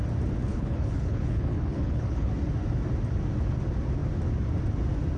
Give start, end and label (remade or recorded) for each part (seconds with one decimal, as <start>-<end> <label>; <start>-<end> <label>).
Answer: 0.0-0.5 recorded; 0.5-2.3 remade; 2.3-5.2 recorded